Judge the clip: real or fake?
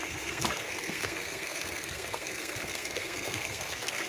fake